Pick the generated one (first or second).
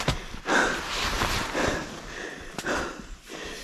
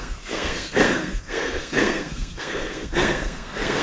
second